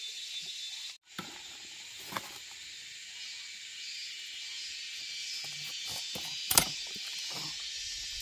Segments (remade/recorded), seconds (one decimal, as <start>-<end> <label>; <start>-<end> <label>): 0.0-8.2 recorded

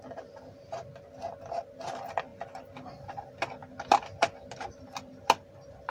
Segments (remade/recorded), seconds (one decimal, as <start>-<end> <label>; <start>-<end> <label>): 0.0-5.9 recorded

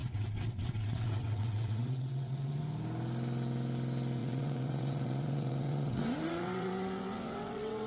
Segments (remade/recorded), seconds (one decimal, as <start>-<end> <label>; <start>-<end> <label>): 0.0-2.6 remade; 2.6-4.2 recorded; 4.2-7.9 remade

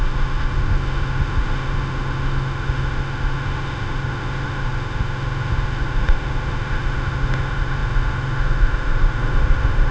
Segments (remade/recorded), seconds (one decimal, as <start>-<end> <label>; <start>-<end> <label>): 0.0-9.9 remade

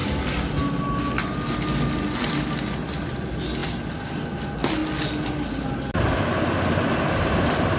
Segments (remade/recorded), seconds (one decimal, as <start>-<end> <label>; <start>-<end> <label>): 0.0-7.8 recorded

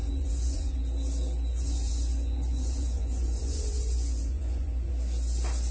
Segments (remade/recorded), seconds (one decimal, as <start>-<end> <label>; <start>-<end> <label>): 0.0-0.8 remade; 0.8-1.5 recorded; 1.5-4.9 remade; 4.9-5.7 recorded

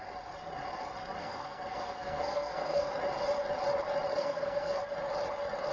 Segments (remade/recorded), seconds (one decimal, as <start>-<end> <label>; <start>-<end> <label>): 0.0-1.2 recorded; 1.2-2.9 remade; 2.9-4.1 recorded; 4.1-4.8 remade; 4.8-5.7 recorded